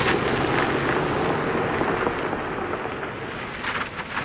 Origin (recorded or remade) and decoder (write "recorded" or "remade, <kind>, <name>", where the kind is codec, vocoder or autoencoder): recorded